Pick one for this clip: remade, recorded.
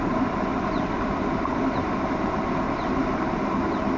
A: recorded